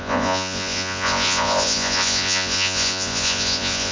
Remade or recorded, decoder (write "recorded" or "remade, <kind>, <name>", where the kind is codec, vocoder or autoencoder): remade, vocoder, Vocos